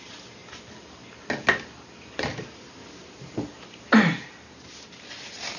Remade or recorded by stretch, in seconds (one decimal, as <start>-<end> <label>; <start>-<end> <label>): 0.0-0.4 remade; 0.4-2.9 recorded; 2.9-5.6 remade